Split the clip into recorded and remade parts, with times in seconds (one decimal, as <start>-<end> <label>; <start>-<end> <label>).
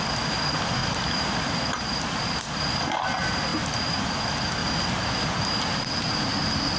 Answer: 0.0-0.8 recorded; 0.8-2.4 remade; 2.4-3.5 recorded; 3.5-4.1 remade; 4.1-4.6 recorded; 4.6-5.1 remade; 5.1-6.8 recorded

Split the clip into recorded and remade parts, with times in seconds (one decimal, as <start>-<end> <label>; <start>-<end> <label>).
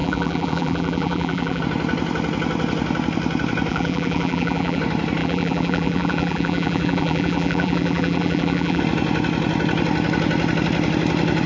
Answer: 0.0-1.6 remade; 1.6-3.7 recorded; 3.7-4.8 remade; 4.8-5.2 recorded; 5.2-8.8 remade; 8.8-11.5 recorded